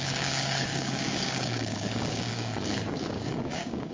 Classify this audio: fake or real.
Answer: fake